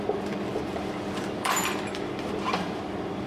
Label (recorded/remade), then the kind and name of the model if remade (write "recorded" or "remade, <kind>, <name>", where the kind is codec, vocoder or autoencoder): remade, vocoder, BigVGAN v2